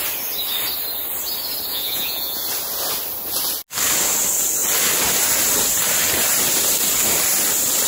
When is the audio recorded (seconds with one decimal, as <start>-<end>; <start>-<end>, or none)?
0.0-1.7; 2.4-7.9